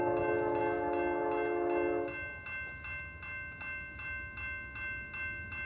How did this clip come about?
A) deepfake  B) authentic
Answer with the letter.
B